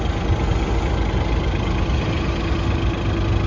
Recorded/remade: recorded